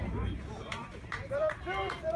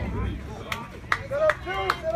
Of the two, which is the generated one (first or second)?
first